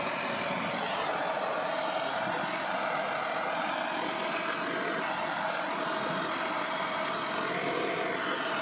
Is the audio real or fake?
real